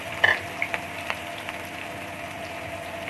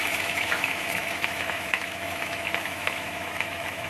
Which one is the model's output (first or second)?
second